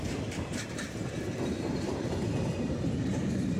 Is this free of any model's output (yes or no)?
no